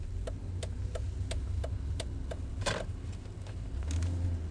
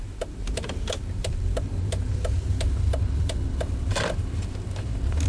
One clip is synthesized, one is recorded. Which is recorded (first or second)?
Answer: first